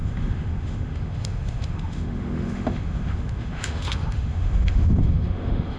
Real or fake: fake